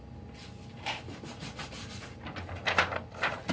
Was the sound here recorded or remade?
recorded